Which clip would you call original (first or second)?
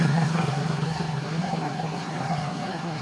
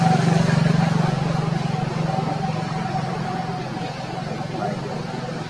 second